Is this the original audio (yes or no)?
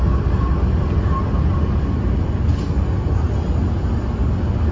yes